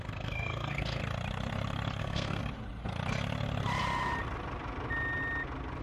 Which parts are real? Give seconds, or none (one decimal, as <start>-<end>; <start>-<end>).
1.0-2.0; 2.4-5.8